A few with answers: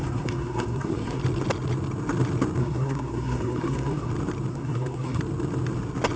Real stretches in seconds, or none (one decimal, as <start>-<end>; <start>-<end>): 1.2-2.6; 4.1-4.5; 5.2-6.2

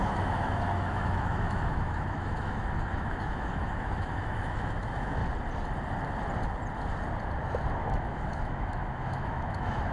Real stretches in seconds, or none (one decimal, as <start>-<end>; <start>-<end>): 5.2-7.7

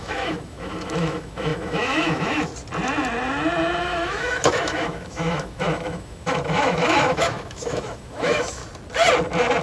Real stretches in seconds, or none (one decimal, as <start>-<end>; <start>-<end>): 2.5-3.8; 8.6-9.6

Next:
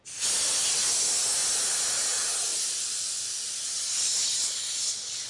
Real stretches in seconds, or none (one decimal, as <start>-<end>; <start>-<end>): 0.0-5.3

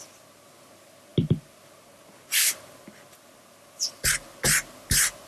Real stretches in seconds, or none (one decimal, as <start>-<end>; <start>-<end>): 0.0-5.3